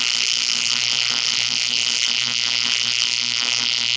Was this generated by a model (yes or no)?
yes